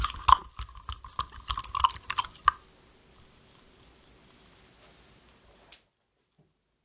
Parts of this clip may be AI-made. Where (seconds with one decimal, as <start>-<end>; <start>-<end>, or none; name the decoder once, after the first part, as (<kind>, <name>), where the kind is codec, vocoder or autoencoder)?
none